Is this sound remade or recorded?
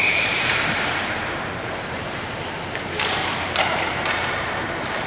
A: remade